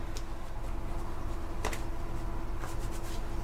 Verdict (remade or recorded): recorded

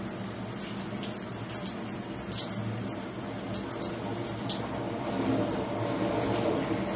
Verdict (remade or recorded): recorded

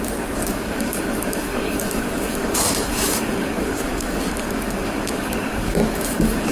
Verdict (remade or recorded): remade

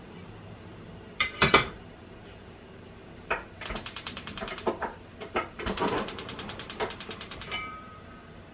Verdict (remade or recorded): remade